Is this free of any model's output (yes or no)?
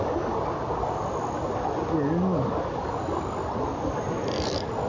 yes